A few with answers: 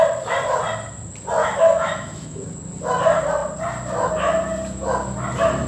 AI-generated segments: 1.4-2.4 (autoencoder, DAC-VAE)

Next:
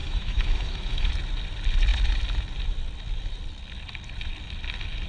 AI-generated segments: 0.0-1.1 (autoencoder, DAC-VAE)

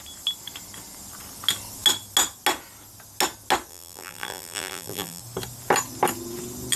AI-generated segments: 3.7-5.2 (vocoder, BigVGAN v2)

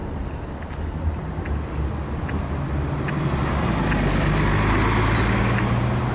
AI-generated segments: none

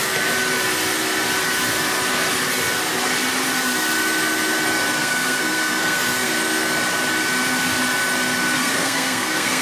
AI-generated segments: 5.0-6.3 (codec, SNAC); 8.6-9.6

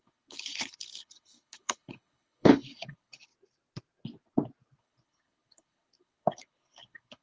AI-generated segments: 0.0-3.3 (codec, HILCodec); 4.8-7.2

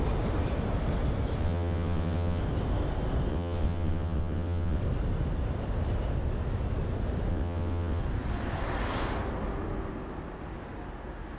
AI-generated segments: 1.4-2.4 (vocoder, WaveNeXt); 3.3-4.8; 7.3-8.0

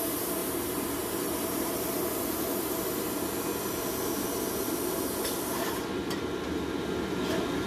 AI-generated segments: 0.4-1.7 (vocoder, BigVGAN v2)